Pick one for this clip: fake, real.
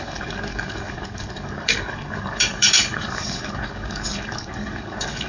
fake